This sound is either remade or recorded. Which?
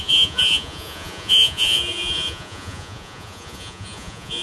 remade